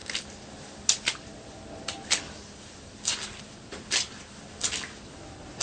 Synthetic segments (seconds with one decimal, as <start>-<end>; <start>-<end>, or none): none